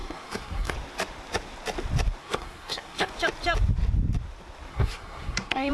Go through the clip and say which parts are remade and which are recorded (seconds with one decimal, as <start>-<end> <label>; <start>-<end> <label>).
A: 0.0-0.7 remade; 0.7-2.2 recorded; 2.2-3.1 remade; 3.1-4.7 recorded; 4.7-5.7 remade